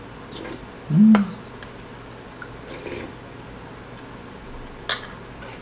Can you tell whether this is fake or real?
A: real